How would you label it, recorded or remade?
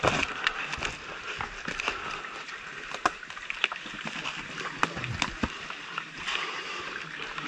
recorded